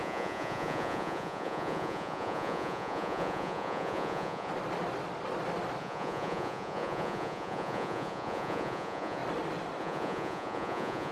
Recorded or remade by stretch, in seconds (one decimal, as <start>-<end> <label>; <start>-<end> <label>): 0.0-4.5 remade; 4.5-5.8 recorded; 5.8-9.2 remade; 9.2-9.8 recorded; 9.8-11.1 remade